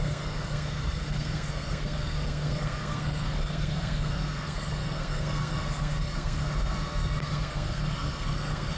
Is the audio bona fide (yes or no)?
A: no